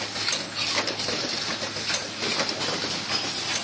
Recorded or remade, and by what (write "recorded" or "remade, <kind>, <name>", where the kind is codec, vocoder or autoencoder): recorded